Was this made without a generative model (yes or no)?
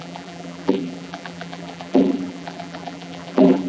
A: no